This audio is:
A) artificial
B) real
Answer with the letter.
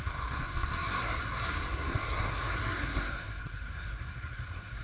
A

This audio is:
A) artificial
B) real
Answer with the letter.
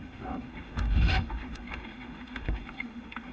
A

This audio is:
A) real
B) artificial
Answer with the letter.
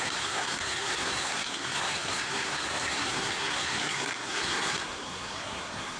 B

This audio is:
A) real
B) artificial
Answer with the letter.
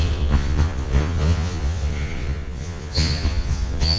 B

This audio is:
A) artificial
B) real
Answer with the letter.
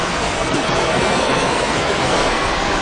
A